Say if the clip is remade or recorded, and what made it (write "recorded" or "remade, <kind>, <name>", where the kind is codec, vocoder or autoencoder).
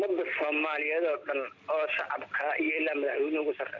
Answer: recorded